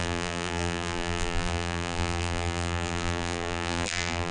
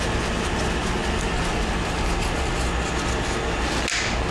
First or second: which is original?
second